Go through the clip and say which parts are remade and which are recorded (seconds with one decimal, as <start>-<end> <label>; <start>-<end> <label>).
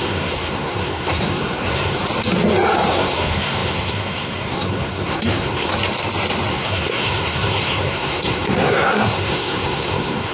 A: 0.0-2.0 remade; 2.0-2.9 recorded; 2.9-5.7 remade; 5.7-6.5 recorded; 6.5-10.3 remade